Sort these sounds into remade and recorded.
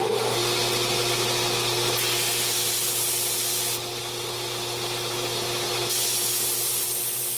recorded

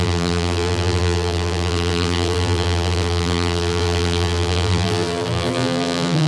remade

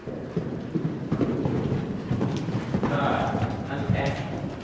remade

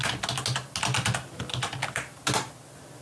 recorded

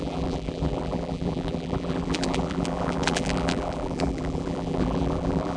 remade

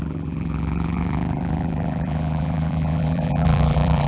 remade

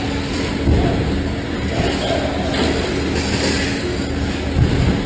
recorded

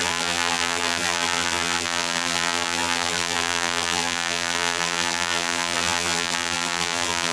remade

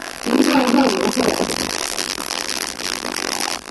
remade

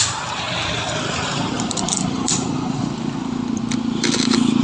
remade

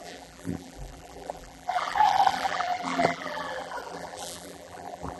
remade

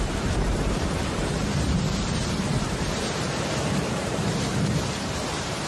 remade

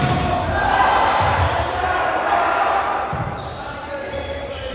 remade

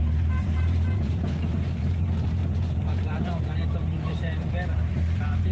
remade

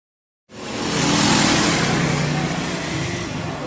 recorded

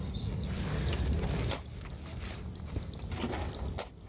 recorded